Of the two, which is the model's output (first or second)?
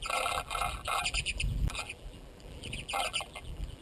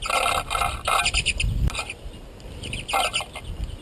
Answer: first